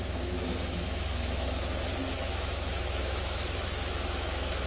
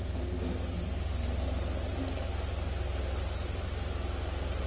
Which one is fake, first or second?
first